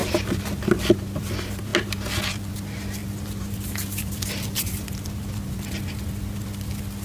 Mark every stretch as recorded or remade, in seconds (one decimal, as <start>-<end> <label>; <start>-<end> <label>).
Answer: 0.0-7.0 recorded